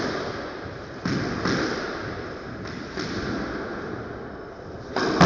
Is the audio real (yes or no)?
yes